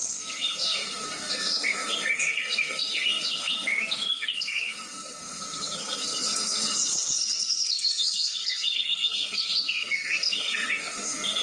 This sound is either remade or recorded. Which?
remade